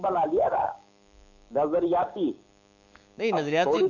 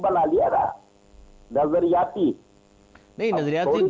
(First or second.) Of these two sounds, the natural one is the second